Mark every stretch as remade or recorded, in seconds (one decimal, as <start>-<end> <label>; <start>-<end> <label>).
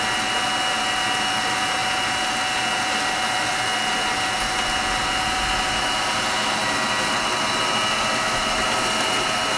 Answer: 0.0-9.6 recorded